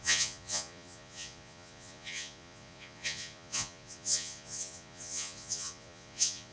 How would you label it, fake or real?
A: fake